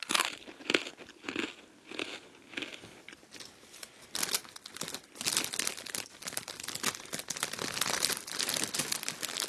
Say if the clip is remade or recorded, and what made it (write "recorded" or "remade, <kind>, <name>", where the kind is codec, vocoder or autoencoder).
recorded